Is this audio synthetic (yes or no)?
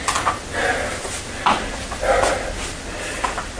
no